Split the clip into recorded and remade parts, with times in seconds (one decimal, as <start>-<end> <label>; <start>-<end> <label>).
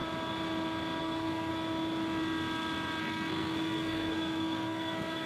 0.0-1.0 recorded; 1.0-1.5 remade; 1.5-3.0 recorded; 3.0-5.3 remade